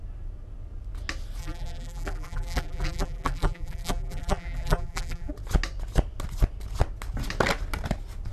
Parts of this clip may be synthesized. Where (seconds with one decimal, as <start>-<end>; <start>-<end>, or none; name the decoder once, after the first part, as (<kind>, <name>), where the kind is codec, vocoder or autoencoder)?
1.4-5.3 (vocoder, BigVGAN v2)